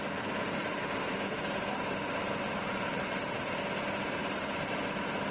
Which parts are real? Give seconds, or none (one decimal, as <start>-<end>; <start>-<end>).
0.0-5.3